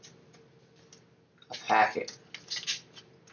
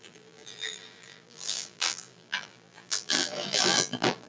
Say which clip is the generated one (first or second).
second